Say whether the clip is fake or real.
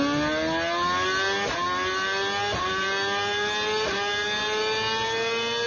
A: real